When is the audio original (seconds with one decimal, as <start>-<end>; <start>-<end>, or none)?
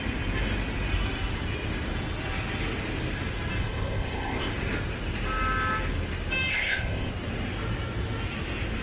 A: 0.0-3.6; 4.5-6.5; 7.1-8.8